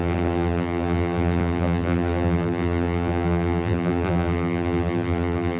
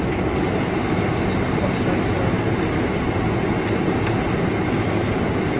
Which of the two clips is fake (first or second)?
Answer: first